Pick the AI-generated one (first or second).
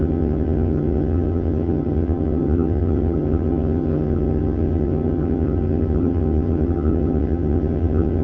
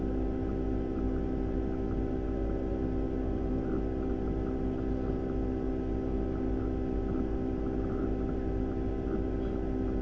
first